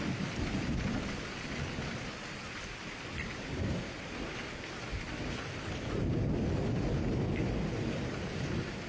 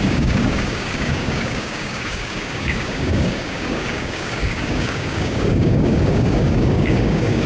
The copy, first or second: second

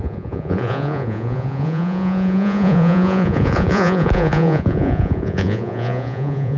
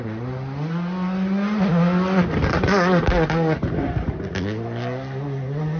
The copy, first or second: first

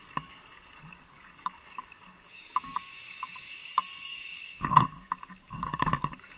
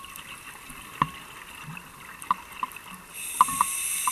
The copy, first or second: first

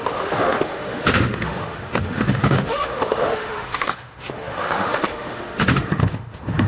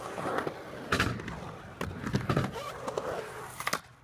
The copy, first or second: first